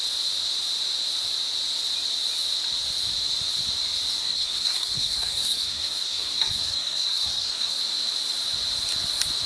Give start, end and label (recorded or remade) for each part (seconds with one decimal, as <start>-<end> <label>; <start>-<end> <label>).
0.0-4.2 recorded; 4.2-7.8 remade; 7.8-9.5 recorded